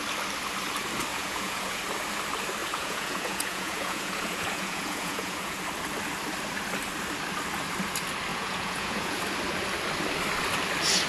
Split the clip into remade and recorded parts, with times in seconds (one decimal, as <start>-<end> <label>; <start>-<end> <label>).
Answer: 0.0-1.1 recorded; 1.1-1.8 remade; 1.8-2.6 recorded; 2.6-5.6 remade; 5.6-8.3 recorded; 8.3-9.2 remade; 9.2-11.1 recorded